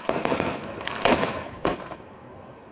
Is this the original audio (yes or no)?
no